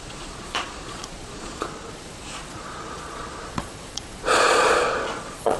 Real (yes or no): no